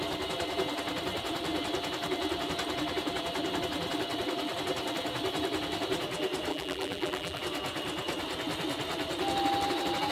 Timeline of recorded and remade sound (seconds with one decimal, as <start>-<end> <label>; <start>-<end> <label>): 0.0-6.5 recorded; 6.5-7.4 remade; 7.4-10.1 recorded